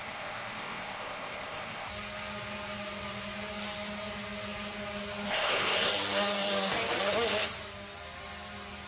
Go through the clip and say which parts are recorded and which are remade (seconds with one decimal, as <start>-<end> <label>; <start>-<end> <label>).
0.0-1.9 remade; 1.9-5.3 recorded; 5.3-5.9 remade; 5.9-8.9 recorded